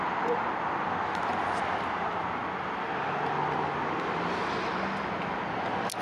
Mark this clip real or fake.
real